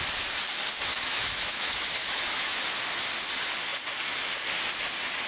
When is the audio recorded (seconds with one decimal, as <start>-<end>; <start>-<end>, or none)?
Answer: 0.0-0.9; 2.6-5.3